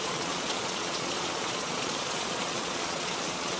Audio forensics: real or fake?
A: fake